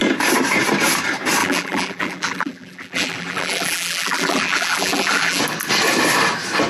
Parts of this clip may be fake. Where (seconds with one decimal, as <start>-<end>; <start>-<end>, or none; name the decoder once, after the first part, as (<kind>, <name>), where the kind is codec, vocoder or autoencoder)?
1.4-5.4 (vocoder, BigVGAN v2)